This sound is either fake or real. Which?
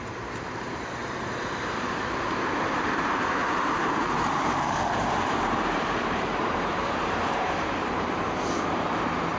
fake